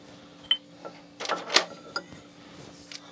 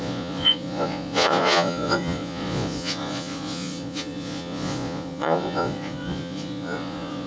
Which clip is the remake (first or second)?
second